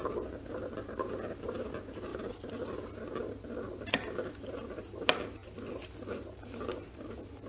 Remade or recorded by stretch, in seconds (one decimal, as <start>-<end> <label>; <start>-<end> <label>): 0.0-7.5 recorded